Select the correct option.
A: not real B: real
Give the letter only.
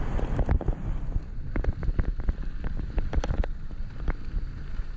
B